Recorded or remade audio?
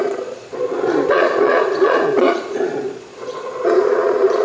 remade